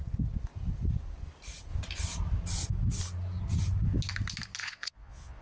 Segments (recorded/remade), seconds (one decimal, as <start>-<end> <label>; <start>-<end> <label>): 0.0-4.6 recorded; 4.6-5.4 remade